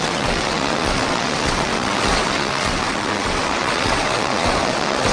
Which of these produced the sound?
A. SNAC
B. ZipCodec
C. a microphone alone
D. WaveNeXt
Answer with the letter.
D